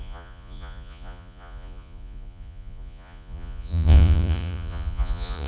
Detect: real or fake fake